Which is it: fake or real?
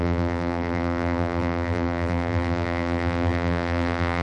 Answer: fake